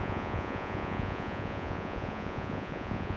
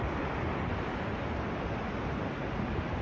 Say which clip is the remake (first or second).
first